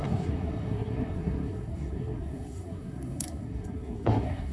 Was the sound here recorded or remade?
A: remade